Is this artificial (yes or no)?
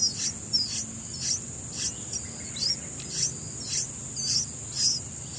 no